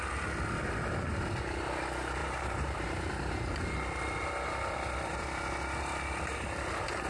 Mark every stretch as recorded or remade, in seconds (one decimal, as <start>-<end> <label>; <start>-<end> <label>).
0.0-2.2 recorded; 2.2-3.3 remade; 3.3-7.1 recorded

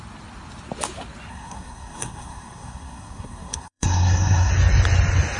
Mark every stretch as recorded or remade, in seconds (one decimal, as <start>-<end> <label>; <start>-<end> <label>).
0.0-1.3 recorded; 1.3-4.5 remade; 4.5-5.4 recorded

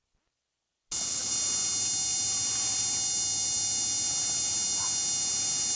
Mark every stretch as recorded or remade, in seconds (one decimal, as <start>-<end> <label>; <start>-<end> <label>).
0.0-5.8 recorded

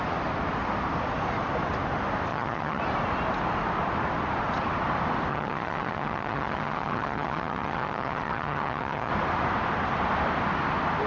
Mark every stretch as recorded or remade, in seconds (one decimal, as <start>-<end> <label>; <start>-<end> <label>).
0.0-2.3 recorded; 2.3-2.8 remade; 2.8-5.3 recorded; 5.3-9.1 remade; 9.1-11.1 recorded

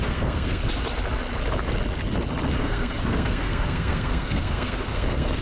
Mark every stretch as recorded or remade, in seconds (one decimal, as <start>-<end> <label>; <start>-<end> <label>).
0.0-0.6 remade; 0.6-2.6 recorded; 2.6-5.4 remade

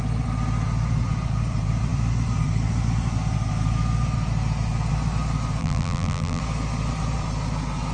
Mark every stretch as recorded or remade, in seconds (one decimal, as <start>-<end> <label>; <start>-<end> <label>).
0.0-5.6 recorded; 5.6-6.4 remade; 6.4-7.9 recorded

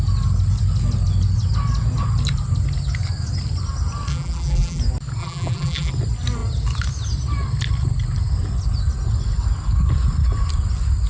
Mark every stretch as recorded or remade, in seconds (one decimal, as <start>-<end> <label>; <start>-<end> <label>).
0.0-4.1 recorded; 4.1-4.8 remade; 4.8-5.2 recorded; 5.2-5.9 remade; 5.9-11.1 recorded